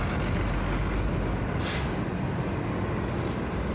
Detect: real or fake real